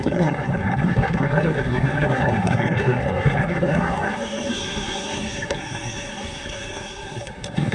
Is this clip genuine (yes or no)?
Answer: no